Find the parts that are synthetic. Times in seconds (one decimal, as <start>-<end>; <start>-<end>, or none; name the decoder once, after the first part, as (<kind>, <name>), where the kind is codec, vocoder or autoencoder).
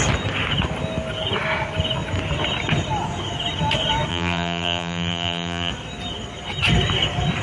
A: 4.1-5.7 (vocoder, BigVGAN v2)